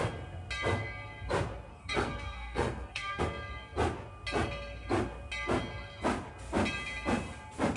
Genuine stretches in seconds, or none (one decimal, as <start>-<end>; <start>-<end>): 0.0-1.7; 3.2-7.8